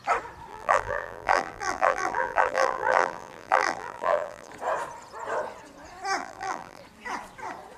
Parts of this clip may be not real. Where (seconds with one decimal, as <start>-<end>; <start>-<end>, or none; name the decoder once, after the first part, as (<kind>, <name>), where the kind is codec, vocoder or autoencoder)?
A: 0.5-4.5 (vocoder, BigVGAN v2); 6.2-6.8